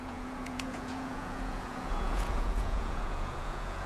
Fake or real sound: fake